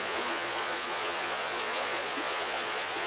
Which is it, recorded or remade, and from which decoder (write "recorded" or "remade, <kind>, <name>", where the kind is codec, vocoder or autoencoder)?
remade, vocoder, Vocos